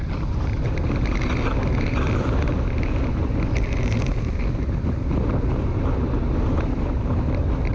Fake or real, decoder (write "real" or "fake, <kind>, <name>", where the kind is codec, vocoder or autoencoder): real